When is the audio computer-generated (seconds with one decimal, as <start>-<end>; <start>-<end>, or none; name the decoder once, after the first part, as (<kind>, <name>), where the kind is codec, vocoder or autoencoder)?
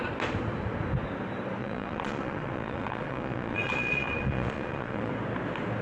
1.6-5.1 (vocoder, Vocos)